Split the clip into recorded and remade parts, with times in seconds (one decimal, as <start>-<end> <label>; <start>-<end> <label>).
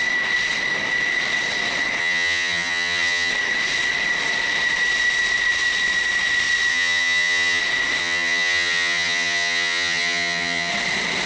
0.0-2.0 recorded; 2.0-3.3 remade; 3.3-6.7 recorded; 6.7-7.6 remade; 7.6-8.0 recorded; 8.0-10.7 remade; 10.7-11.3 recorded